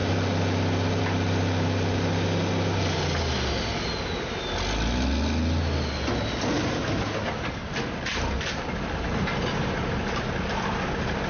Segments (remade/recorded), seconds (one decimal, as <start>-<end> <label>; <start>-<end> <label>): 0.0-7.6 recorded; 7.6-8.8 remade; 8.8-11.3 recorded